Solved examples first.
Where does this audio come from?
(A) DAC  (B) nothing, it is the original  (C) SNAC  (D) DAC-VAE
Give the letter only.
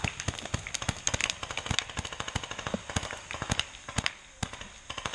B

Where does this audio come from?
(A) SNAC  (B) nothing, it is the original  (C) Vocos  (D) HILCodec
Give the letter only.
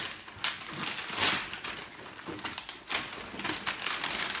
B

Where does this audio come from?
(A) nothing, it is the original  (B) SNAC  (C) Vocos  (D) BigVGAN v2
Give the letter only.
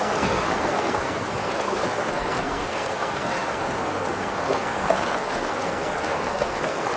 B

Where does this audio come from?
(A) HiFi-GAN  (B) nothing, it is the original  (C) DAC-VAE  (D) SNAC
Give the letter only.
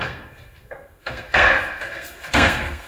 D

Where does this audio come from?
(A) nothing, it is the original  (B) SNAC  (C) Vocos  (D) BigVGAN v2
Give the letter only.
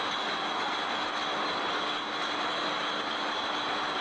A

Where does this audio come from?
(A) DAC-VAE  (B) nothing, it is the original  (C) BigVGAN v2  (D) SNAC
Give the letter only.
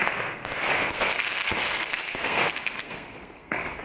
D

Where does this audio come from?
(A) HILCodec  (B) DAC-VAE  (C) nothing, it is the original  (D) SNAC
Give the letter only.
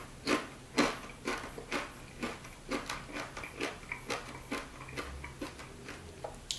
C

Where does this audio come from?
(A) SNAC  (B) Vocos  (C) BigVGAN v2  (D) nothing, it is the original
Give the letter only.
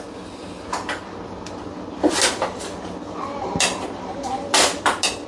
D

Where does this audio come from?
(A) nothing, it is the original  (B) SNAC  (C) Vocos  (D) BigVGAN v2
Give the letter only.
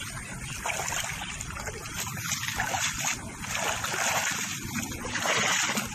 A